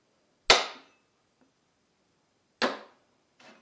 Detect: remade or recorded recorded